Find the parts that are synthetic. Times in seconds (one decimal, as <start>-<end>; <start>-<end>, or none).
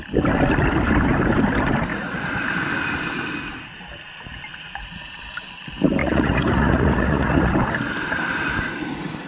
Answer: 1.9-2.4; 4.5-5.1; 6.0-7.5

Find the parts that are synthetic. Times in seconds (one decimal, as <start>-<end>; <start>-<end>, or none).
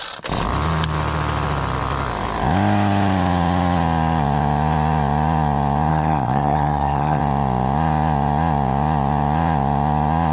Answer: 5.9-7.2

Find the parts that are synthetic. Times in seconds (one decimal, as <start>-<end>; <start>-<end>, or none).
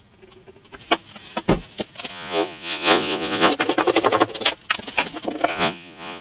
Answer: 2.1-3.5; 5.5-6.2